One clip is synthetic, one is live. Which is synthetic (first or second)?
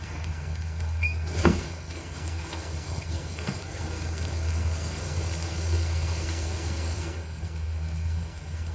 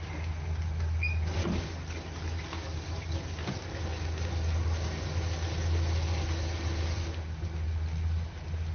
first